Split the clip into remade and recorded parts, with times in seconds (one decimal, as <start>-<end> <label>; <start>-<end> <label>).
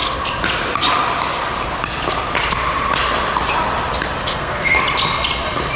0.0-4.2 recorded; 4.2-4.8 remade; 4.8-5.8 recorded